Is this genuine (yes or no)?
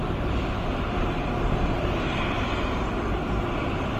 no